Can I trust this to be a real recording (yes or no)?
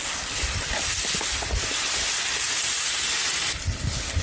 yes